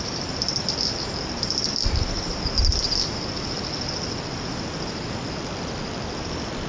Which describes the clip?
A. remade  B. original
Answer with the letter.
B